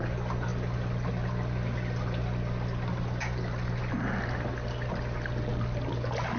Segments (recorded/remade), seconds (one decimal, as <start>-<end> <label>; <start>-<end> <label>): 0.0-6.4 recorded